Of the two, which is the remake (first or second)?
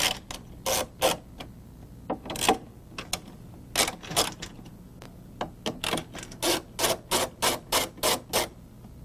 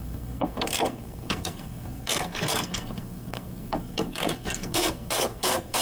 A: second